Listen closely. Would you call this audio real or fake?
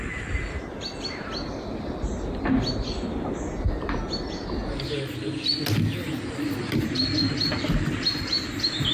real